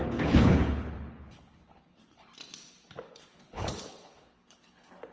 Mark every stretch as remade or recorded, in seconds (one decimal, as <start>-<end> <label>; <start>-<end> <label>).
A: 0.0-2.3 remade; 2.3-3.1 recorded; 3.1-5.1 remade